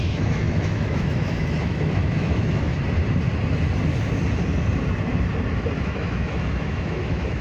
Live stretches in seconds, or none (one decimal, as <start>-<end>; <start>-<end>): 2.7-5.8